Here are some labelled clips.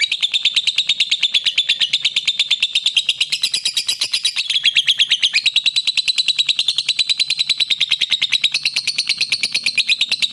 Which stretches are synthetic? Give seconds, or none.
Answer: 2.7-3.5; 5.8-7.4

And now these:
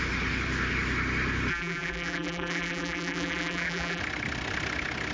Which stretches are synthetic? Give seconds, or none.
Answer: 1.5-4.0

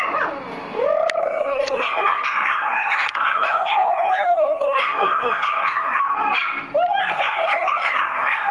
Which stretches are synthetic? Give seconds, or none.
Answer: 1.2-6.0; 7.0-8.5

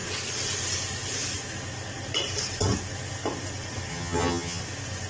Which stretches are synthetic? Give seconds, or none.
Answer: 3.9-4.6

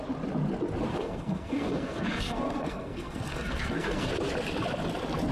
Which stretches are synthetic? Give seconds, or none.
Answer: 0.9-4.1

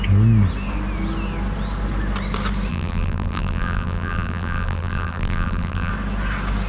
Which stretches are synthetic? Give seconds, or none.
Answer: 2.7-5.9